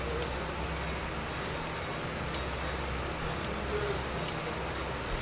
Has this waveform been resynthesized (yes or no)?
no